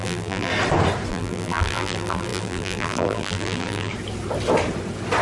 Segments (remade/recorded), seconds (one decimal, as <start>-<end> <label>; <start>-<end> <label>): 0.0-0.5 remade; 0.5-1.1 recorded; 1.1-3.9 remade; 3.9-5.2 recorded